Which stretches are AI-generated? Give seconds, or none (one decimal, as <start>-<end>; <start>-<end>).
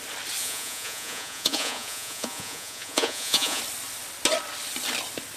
0.4-3.6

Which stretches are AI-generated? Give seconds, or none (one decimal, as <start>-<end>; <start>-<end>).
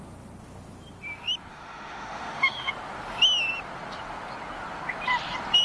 1.5-2.7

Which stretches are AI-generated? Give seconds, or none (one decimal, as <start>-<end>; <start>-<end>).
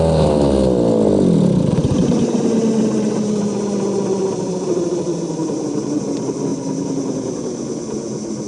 5.4-6.0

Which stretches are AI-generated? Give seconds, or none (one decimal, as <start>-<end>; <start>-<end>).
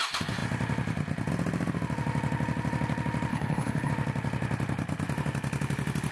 3.3-3.9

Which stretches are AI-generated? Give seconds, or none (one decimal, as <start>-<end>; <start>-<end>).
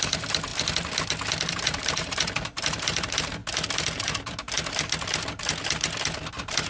0.0-0.5; 1.5-3.4; 6.3-6.7